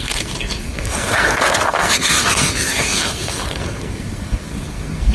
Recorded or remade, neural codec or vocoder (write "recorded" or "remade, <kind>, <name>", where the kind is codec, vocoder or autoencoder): remade, codec, SNAC